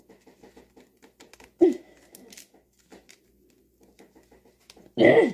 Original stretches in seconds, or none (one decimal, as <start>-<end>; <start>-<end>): 0.0-5.3